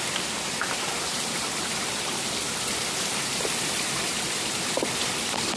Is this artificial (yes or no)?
yes